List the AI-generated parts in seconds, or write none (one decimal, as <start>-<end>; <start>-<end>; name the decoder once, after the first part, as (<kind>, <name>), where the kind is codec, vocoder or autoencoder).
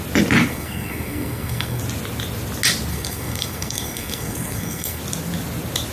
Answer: 0.5-1.8 (codec, SNAC); 2.9-5.0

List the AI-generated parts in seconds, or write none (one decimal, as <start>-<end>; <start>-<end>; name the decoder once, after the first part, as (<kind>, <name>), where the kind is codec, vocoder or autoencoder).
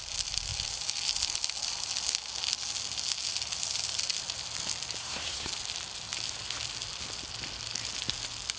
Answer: 5.0-5.5 (codec, SNAC)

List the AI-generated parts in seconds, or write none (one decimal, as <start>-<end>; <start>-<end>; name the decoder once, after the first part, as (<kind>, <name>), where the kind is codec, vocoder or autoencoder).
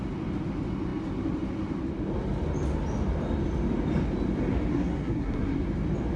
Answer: 4.7-5.6 (codec, SNAC)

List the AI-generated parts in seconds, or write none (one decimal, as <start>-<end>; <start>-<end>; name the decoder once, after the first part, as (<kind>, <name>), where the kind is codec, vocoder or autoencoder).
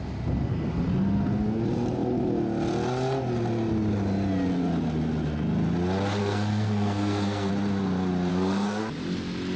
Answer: 6.2-7.5 (codec, SNAC); 8.3-8.8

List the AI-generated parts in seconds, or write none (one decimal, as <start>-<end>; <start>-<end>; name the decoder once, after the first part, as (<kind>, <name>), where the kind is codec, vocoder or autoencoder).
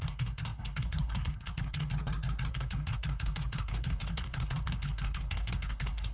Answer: 0.0-1.9 (codec, SNAC); 2.5-6.1